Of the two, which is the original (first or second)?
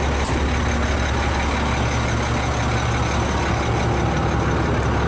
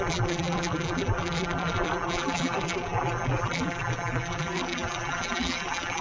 first